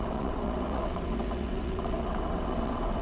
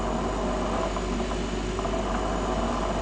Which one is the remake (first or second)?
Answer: first